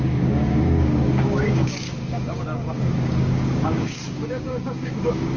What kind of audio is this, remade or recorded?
remade